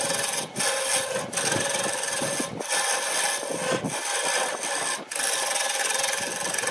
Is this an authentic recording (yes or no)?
yes